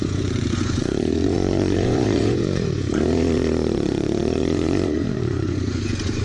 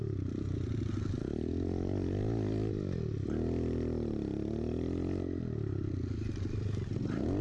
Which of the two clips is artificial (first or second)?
first